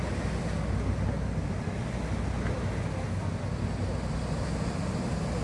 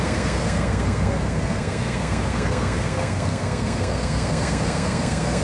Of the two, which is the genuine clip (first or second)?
first